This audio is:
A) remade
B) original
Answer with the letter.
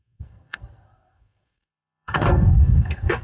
A